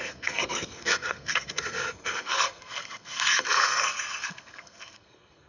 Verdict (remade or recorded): remade